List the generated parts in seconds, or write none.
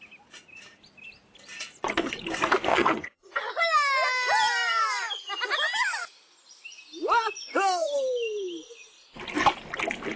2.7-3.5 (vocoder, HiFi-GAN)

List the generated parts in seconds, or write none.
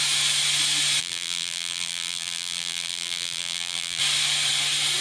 1.0-4.0 (vocoder, BigVGAN v2)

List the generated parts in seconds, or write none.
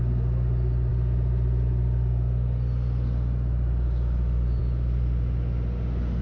none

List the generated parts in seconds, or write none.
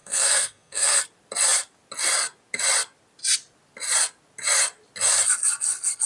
0.0-1.0 (codec, SNAC)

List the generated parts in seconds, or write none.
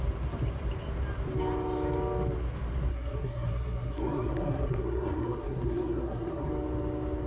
2.9-6.5 (codec, SNAC)